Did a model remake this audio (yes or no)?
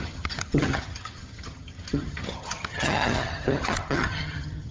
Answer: yes